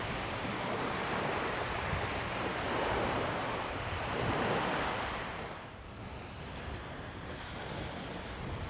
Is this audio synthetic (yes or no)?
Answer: no